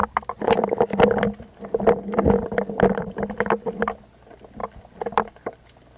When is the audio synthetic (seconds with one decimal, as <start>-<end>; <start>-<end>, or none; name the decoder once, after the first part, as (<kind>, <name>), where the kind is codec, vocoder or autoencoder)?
0.0-0.7 (vocoder, BigVGAN v2); 3.0-4.0